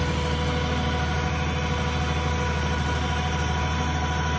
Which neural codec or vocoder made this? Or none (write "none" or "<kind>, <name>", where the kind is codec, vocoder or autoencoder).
none